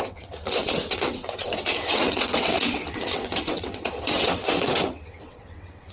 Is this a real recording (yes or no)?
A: no